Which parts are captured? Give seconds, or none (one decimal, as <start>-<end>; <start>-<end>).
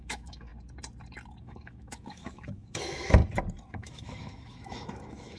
0.5-1.4; 3.2-3.7